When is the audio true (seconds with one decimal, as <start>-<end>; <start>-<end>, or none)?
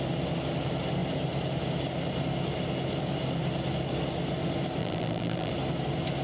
0.0-4.8; 5.5-6.2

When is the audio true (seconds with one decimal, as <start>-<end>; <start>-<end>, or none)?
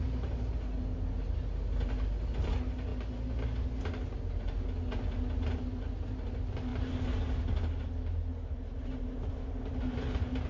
0.0-10.5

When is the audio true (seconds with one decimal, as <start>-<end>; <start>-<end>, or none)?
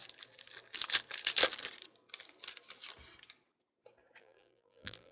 0.0-4.2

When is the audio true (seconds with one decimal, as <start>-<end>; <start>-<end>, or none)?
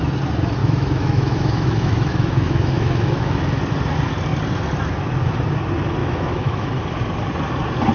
0.0-0.6; 3.6-6.0; 6.8-7.9